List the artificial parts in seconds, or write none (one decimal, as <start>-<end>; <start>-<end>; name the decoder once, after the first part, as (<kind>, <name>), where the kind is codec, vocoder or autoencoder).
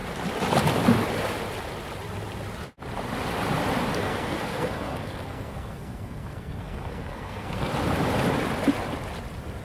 4.0-7.7 (codec, SNAC)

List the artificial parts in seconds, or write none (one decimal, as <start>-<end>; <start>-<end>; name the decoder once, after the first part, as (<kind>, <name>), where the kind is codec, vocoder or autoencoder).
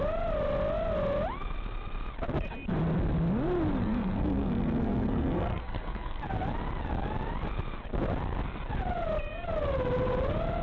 3.8-6.2 (codec, SNAC)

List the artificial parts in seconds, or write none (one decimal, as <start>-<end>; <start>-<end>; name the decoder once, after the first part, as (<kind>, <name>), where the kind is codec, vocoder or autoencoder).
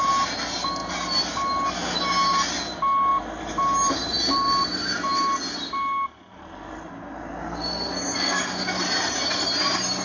7.4-8.4 (codec, SNAC)